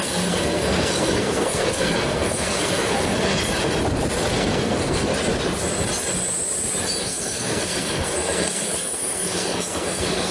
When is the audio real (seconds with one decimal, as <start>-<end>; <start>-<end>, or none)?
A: 3.3-4.3; 5.1-7.0